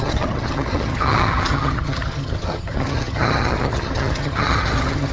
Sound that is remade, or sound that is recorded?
remade